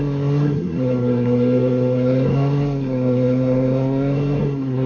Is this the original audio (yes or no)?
no